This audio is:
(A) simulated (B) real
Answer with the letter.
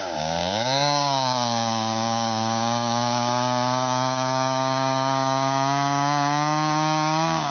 A